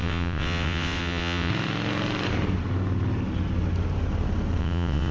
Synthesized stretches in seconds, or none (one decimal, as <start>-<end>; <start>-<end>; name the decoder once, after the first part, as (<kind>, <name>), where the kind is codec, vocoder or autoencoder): 0.0-1.5 (vocoder, WaveNeXt); 4.6-5.1